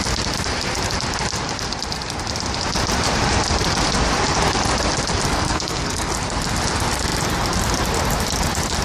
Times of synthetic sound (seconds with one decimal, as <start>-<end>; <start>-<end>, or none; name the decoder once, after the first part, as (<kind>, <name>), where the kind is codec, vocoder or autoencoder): 5.3-6.1 (codec, SNAC)